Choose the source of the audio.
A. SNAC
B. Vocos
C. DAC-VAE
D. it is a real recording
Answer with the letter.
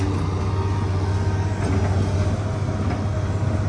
D